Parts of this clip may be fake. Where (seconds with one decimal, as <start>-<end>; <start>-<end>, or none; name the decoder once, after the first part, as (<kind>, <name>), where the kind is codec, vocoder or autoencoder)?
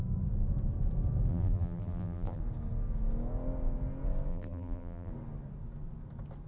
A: 1.3-2.4 (vocoder, BigVGAN v2); 4.3-5.1